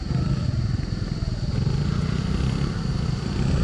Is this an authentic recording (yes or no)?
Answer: no